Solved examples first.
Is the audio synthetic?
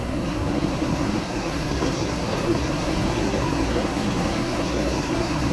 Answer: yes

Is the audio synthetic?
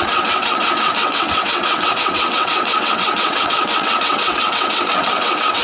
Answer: yes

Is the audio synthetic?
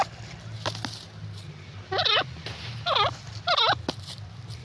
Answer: no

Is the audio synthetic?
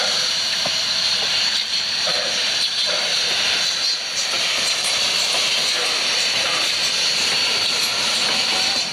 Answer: yes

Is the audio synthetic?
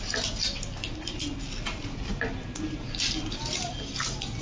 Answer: no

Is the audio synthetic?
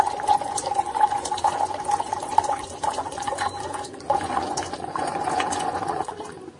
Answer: yes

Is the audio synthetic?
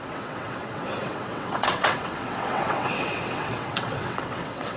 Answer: yes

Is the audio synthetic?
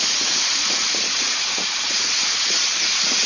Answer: yes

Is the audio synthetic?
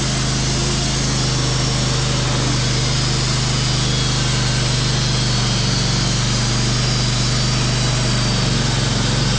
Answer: no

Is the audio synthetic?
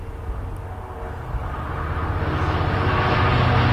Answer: no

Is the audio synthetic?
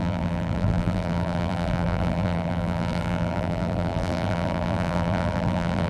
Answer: yes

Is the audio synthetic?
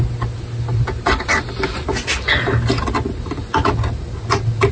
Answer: no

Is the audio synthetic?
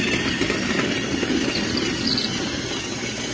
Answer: no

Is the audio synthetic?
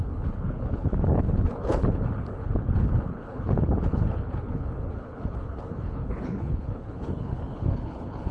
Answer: yes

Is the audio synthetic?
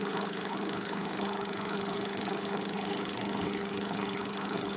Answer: yes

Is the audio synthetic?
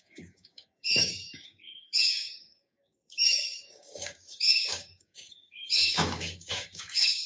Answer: yes